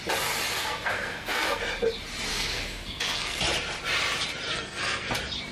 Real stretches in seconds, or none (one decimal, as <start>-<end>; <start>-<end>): 0.0-0.5; 1.6-2.3; 3.4-4.5; 5.1-5.5